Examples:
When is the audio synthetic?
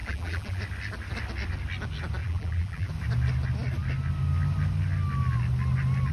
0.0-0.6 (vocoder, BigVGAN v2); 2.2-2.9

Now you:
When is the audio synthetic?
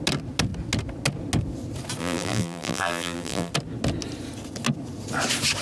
2.0-3.5 (vocoder, BigVGAN v2)